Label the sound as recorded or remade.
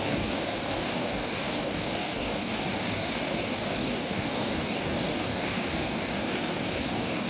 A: remade